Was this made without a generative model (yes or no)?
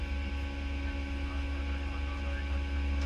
yes